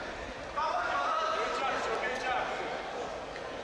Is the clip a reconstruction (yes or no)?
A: no